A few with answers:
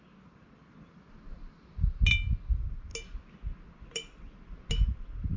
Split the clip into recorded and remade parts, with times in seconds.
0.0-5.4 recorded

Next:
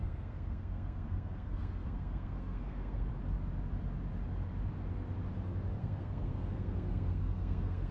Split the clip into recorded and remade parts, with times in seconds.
0.0-3.1 remade; 3.1-5.8 recorded; 5.8-7.9 remade

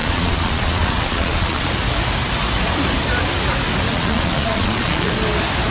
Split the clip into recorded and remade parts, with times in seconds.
0.0-1.7 remade; 1.7-3.9 recorded; 3.9-5.1 remade; 5.1-5.7 recorded

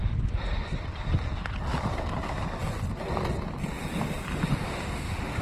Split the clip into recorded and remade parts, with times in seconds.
0.0-4.5 recorded; 4.5-5.4 remade

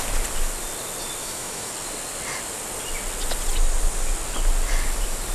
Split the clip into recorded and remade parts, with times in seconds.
0.0-1.2 recorded; 1.2-1.7 remade; 1.7-5.3 recorded

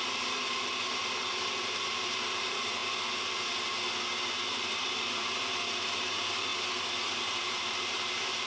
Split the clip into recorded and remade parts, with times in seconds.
0.0-2.8 remade; 2.8-4.2 recorded; 4.2-6.5 remade; 6.5-7.0 recorded; 7.0-8.5 remade

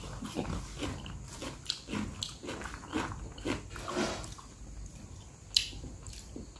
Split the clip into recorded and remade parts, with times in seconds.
0.0-6.6 recorded

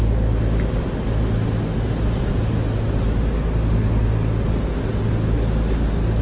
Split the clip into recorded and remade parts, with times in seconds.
0.0-6.2 recorded